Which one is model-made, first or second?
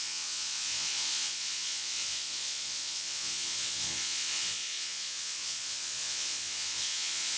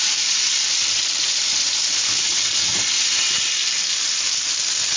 first